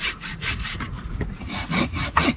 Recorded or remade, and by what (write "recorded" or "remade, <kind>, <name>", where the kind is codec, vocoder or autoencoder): remade, vocoder, Vocos